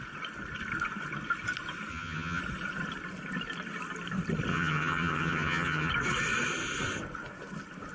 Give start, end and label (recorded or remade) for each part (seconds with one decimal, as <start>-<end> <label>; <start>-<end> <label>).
0.0-1.9 recorded; 1.9-2.4 remade; 2.4-4.5 recorded; 4.5-5.9 remade; 5.9-7.9 recorded